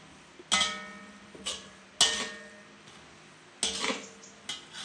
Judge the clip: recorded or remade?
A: recorded